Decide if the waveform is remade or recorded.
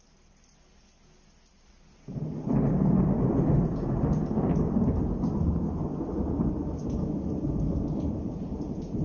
recorded